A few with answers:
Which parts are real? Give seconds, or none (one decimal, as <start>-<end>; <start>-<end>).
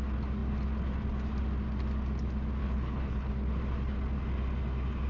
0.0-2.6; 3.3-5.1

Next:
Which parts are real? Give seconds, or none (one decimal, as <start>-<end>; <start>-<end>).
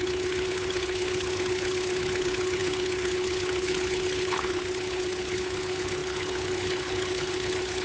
none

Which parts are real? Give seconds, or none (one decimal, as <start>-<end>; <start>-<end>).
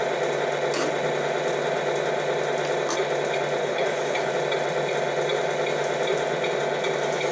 0.0-3.6; 4.3-7.3